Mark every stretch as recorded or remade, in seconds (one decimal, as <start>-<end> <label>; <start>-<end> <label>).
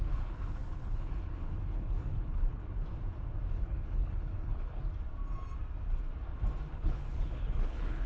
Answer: 0.0-2.6 remade; 2.6-3.5 recorded; 3.5-4.8 remade; 4.8-6.7 recorded; 6.7-8.1 remade